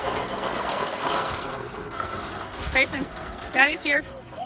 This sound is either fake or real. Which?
fake